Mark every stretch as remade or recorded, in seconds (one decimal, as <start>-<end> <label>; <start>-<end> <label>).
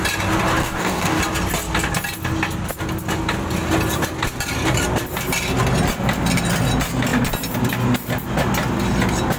0.0-0.6 recorded; 0.6-1.2 remade; 1.2-9.4 recorded